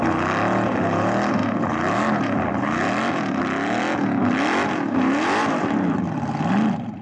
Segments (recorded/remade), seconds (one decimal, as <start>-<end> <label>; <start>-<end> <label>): 0.0-7.0 recorded